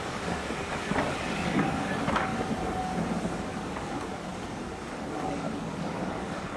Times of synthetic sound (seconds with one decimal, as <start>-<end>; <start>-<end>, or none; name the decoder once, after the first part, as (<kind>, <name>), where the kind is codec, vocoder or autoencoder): 0.0-2.3 (codec, DAC); 3.2-4.3; 4.9-6.6